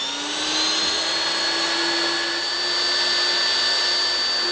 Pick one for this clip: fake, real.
real